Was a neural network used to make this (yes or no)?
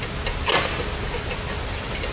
no